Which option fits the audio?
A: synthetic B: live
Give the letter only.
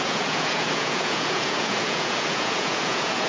A